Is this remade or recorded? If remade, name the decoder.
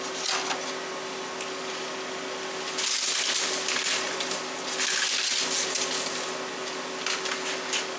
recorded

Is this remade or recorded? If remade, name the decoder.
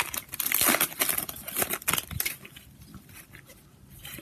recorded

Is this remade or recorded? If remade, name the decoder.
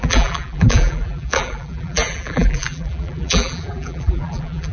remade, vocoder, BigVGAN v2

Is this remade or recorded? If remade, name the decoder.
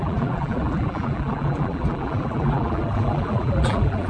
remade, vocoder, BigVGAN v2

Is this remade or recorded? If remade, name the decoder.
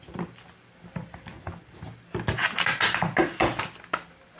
remade, vocoder, BigVGAN v2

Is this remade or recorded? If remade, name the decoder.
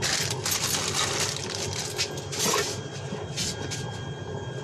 recorded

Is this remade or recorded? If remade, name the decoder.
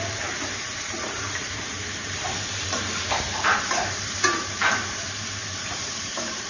remade, vocoder, BigVGAN v2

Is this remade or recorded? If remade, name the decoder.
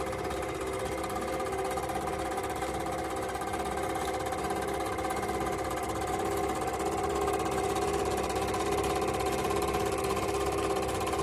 recorded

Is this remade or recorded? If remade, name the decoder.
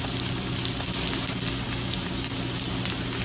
recorded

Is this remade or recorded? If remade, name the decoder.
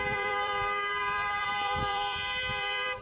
remade, vocoder, BigVGAN v2